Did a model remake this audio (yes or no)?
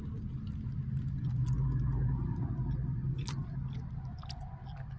no